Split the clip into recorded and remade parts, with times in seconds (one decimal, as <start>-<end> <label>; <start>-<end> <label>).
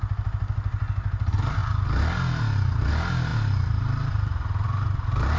0.0-5.4 recorded